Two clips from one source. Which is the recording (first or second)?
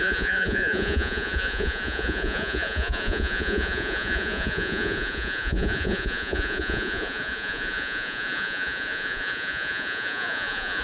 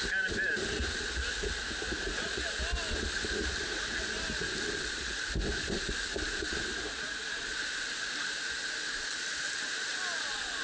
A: second